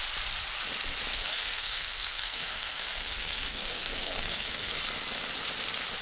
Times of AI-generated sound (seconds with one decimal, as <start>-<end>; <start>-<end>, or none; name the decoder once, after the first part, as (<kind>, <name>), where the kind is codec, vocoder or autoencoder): 1.1-4.7 (codec, SNAC)